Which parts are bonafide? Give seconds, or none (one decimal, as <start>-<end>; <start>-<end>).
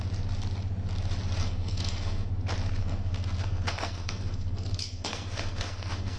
0.0-1.4; 2.3-2.8